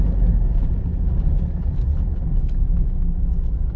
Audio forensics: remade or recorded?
recorded